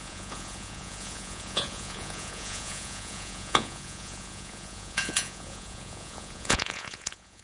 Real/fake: fake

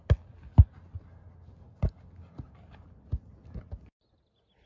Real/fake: real